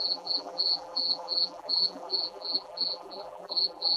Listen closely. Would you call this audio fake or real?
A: fake